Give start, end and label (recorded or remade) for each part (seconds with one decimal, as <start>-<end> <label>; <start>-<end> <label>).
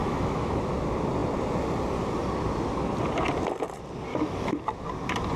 0.0-0.6 remade; 0.6-4.1 recorded; 4.1-4.6 remade; 4.6-5.4 recorded